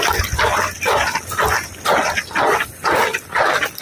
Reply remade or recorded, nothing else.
recorded